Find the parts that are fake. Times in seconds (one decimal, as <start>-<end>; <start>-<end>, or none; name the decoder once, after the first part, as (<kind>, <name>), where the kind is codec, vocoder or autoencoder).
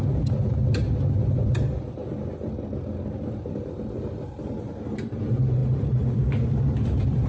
0.0-2.0 (vocoder, BigVGAN v2); 4.8-7.3